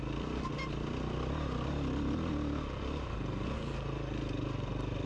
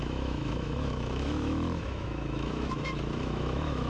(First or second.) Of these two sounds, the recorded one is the first